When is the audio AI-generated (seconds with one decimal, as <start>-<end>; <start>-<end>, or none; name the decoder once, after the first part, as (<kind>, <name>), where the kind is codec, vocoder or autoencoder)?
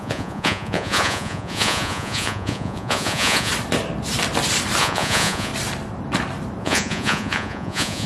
0.0-3.5 (vocoder, Vocos); 4.8-5.5; 6.6-8.1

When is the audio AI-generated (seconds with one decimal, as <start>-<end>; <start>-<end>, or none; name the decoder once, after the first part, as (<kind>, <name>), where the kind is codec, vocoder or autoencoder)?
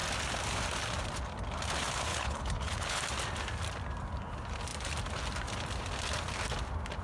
2.1-3.0 (codec, HILCodec)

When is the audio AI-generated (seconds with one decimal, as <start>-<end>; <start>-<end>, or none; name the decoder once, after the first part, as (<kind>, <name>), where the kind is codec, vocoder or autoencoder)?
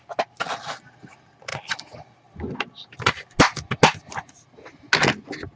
none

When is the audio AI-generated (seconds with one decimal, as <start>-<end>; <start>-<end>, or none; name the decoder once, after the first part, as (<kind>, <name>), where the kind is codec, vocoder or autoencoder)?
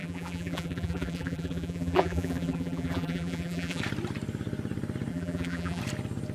0.0-3.8 (vocoder, BigVGAN v2); 5.1-5.8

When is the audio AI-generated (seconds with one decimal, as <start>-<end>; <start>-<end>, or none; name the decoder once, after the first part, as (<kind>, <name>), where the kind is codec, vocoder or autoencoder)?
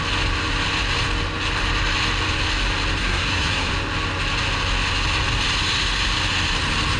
3.0-3.7 (codec, SNAC)